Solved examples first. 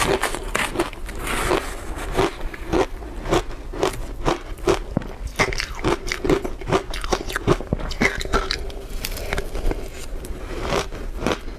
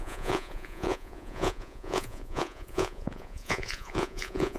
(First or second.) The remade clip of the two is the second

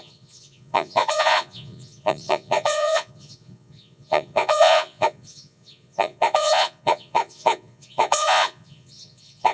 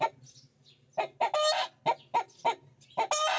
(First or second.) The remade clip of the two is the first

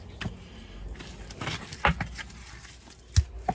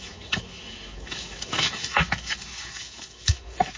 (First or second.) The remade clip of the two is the second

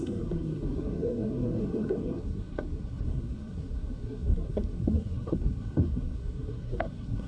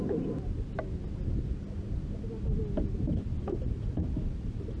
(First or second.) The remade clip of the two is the first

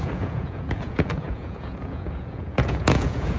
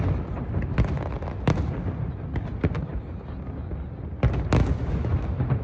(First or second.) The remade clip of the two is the first